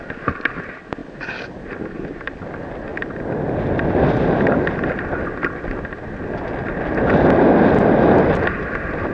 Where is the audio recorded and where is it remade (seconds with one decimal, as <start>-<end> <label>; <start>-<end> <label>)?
0.0-9.1 recorded